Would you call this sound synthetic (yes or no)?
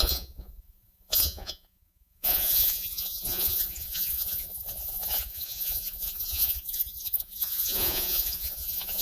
yes